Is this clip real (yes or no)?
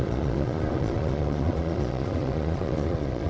no